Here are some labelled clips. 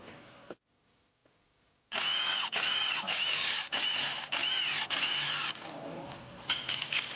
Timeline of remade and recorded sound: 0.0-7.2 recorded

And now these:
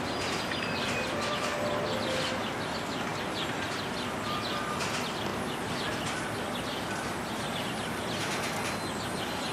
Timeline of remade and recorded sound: 0.0-9.5 recorded